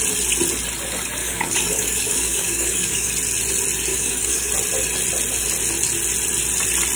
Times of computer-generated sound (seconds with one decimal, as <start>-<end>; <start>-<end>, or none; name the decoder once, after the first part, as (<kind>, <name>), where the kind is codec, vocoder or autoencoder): 1.2-3.1 (codec, DAC); 3.9-4.5